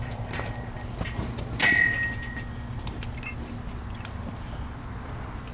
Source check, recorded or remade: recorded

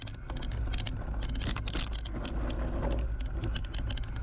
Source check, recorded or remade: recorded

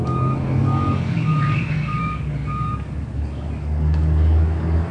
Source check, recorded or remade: remade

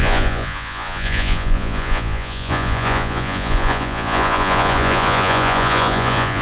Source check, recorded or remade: remade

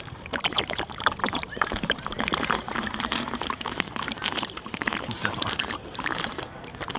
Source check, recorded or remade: remade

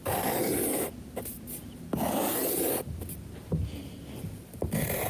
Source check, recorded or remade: recorded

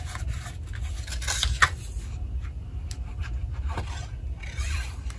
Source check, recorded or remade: recorded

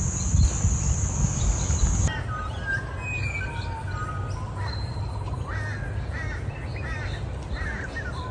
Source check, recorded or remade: recorded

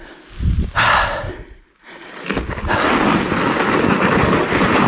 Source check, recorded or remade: recorded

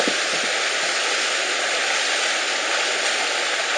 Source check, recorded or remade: recorded